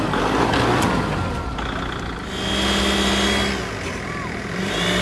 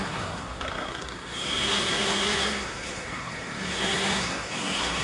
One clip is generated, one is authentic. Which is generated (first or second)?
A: second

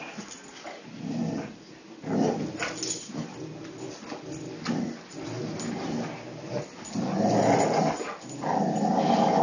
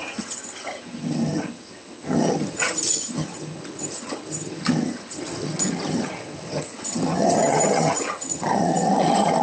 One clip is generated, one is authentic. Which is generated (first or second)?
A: second